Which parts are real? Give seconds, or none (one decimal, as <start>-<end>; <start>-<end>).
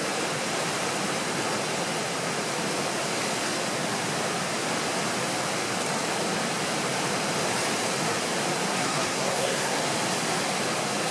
0.0-8.7; 9.8-11.1